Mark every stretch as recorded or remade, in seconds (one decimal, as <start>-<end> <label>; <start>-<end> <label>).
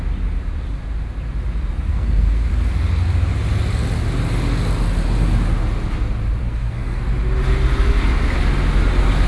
0.0-1.9 recorded; 1.9-2.5 remade; 2.5-6.4 recorded; 6.4-7.0 remade; 7.0-9.3 recorded